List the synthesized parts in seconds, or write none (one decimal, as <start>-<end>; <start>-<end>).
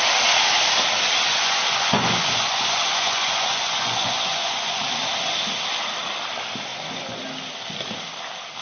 1.3-4.8; 6.7-7.2